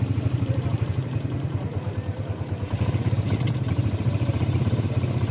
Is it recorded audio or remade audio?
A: remade